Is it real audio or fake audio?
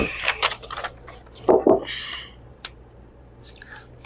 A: fake